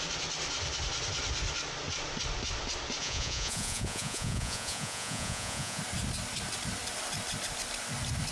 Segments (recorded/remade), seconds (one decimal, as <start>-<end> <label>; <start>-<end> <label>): 0.0-3.0 recorded; 3.0-5.8 remade; 5.8-8.3 recorded